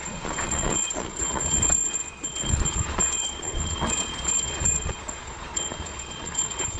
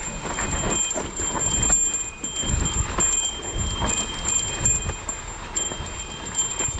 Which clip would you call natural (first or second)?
second